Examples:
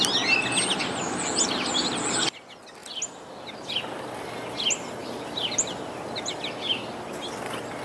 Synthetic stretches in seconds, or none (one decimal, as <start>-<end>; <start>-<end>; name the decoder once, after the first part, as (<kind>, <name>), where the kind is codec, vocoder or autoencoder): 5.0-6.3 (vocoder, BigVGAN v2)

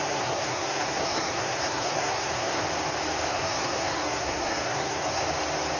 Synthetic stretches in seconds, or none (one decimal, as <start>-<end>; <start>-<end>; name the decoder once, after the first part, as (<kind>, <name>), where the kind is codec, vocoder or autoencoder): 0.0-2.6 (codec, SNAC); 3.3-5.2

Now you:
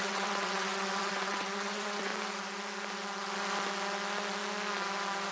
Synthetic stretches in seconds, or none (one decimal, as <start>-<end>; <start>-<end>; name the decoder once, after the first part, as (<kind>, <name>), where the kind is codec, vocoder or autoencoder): 0.0-2.1 (vocoder, WaveNeXt)